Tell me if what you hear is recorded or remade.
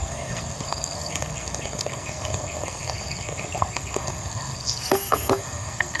remade